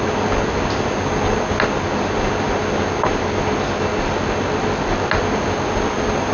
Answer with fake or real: real